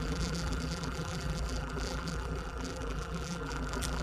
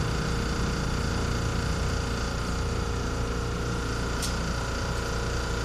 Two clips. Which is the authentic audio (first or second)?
second